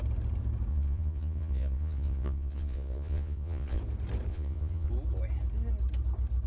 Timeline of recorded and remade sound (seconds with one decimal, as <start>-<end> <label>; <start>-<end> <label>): 0.0-0.7 recorded; 0.7-3.8 remade; 3.8-4.3 recorded; 4.3-4.9 remade; 4.9-6.5 recorded